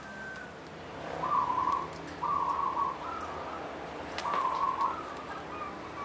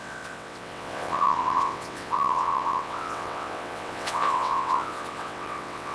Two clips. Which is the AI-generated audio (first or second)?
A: second